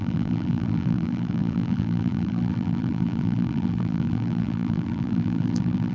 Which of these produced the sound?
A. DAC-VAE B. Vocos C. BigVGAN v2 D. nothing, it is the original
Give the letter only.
C